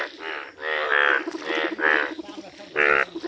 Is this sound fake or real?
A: real